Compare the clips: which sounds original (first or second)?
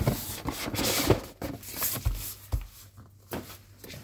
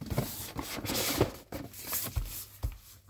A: first